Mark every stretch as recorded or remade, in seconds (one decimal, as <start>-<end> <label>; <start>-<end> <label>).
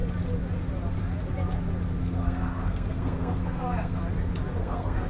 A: 0.0-2.0 recorded; 2.0-4.0 remade; 4.0-4.6 recorded; 4.6-5.1 remade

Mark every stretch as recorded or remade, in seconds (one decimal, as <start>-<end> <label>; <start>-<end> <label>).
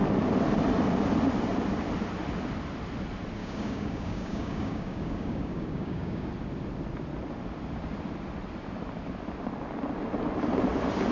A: 0.0-3.4 recorded; 3.4-6.3 remade; 6.3-11.1 recorded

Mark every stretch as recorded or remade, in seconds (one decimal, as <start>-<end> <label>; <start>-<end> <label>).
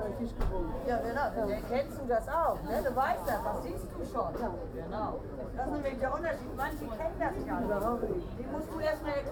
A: 0.0-6.3 recorded; 6.3-6.9 remade; 6.9-9.3 recorded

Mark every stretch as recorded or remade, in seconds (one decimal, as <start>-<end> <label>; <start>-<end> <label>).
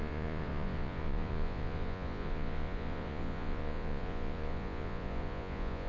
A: 0.0-5.9 remade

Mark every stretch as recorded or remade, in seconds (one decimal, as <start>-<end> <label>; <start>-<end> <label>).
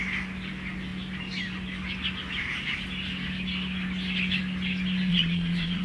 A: 0.0-5.1 recorded; 5.1-5.8 remade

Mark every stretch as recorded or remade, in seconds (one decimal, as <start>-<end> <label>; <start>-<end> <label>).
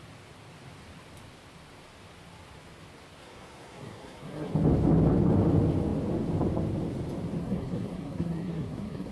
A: 0.0-3.2 recorded; 3.2-4.5 remade; 4.5-7.4 recorded; 7.4-9.1 remade